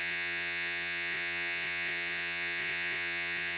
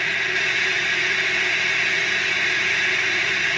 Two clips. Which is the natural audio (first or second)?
second